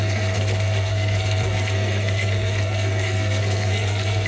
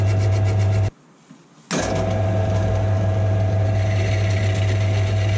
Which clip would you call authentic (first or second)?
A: second